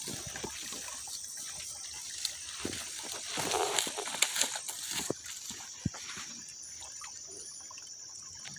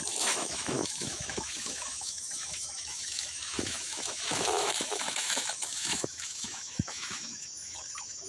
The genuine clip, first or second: first